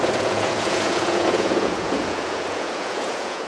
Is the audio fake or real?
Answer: fake